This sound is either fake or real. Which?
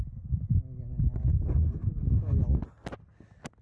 real